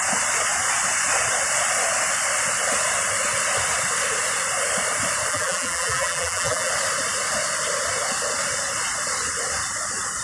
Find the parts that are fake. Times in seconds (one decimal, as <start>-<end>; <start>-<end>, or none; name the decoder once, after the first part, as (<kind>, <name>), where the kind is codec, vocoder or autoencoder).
5.3-6.7 (vocoder, BigVGAN v2)